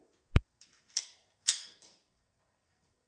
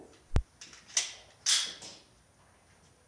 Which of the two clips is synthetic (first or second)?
first